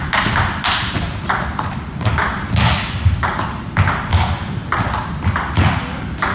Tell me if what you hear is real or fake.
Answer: real